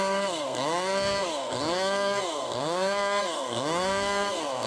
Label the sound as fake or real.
fake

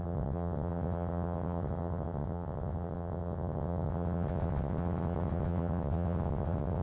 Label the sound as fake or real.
fake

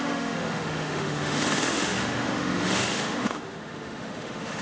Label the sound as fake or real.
fake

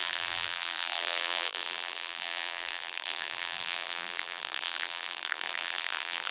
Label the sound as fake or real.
fake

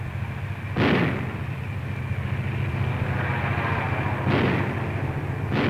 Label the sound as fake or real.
real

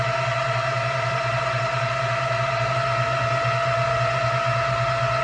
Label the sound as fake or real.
real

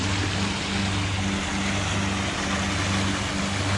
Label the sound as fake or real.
real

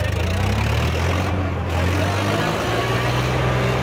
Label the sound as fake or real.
real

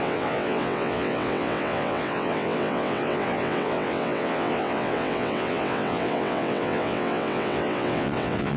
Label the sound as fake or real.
fake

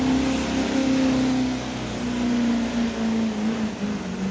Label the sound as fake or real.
real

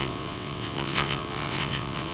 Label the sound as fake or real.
fake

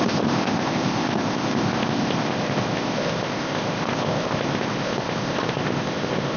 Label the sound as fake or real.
fake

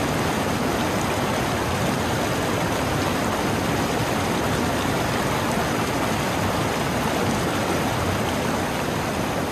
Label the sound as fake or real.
real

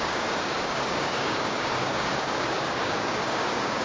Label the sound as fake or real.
fake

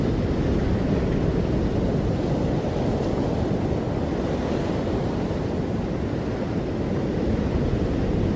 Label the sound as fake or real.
real